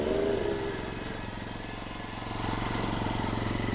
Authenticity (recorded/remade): recorded